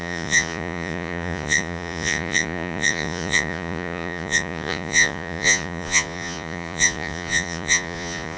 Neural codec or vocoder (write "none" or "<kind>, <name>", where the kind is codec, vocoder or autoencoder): vocoder, Vocos